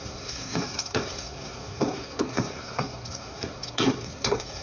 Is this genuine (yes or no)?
no